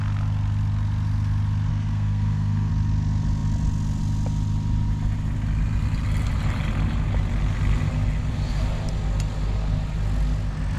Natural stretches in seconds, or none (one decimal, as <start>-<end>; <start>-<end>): 0.0-1.7; 2.7-10.8